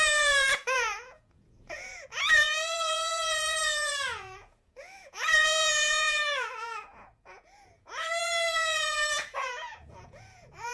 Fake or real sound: fake